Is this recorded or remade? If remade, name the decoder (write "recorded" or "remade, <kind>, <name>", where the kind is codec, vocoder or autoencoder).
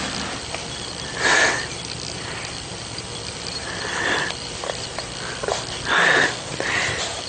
recorded